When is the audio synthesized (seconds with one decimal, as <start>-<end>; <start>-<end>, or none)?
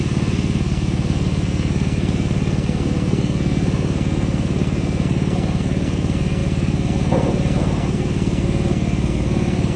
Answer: 0.0-9.8